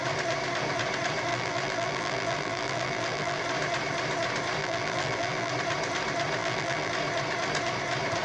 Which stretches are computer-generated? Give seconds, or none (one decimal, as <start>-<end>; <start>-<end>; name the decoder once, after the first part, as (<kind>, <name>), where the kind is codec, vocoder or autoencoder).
1.3-3.4 (vocoder, BigVGAN v2); 4.6-5.5; 6.4-6.9